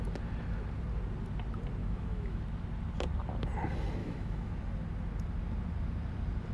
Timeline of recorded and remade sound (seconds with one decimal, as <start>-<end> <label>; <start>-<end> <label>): 0.0-1.8 recorded; 1.8-2.4 remade; 2.4-4.0 recorded; 4.0-4.5 remade; 4.5-6.5 recorded

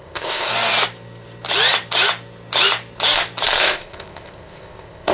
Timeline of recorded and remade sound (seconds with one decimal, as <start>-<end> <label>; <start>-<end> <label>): 0.0-0.5 remade; 0.5-3.6 recorded; 3.6-5.1 remade

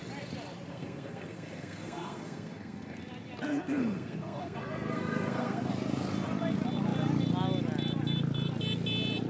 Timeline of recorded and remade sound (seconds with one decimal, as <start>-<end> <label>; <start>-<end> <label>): 0.0-0.7 recorded; 0.7-3.0 remade; 3.0-3.5 recorded; 3.5-5.7 remade; 5.7-9.3 recorded

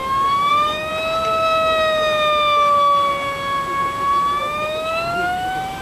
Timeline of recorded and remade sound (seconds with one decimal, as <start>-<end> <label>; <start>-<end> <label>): 0.0-0.9 remade; 0.9-4.4 recorded; 4.4-5.8 remade